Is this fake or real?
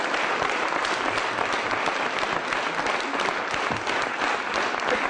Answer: real